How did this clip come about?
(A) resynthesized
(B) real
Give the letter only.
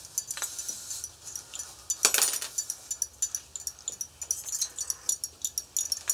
B